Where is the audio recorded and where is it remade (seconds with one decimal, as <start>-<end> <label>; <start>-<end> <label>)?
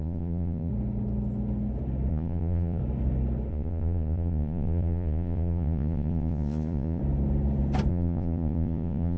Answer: 0.0-0.7 remade; 0.7-2.1 recorded; 2.1-2.8 remade; 2.8-3.5 recorded; 3.5-7.0 remade; 7.0-7.9 recorded; 7.9-9.2 remade